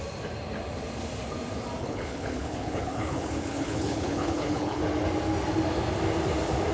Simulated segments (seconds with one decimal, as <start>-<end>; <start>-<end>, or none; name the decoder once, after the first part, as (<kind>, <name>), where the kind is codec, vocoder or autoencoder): 1.8-4.8 (codec, HILCodec)